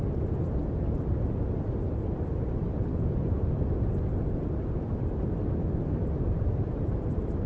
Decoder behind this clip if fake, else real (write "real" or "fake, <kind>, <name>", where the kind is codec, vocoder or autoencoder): real